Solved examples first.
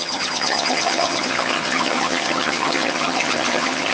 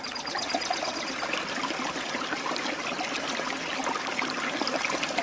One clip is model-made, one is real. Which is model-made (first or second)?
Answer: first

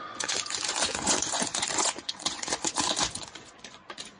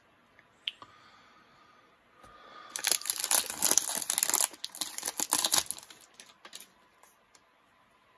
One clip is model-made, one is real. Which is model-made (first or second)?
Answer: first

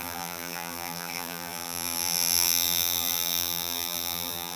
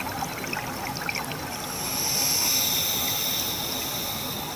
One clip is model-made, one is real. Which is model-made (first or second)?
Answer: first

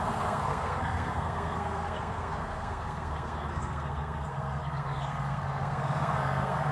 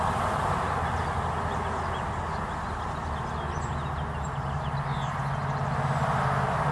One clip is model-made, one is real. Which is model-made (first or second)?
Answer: first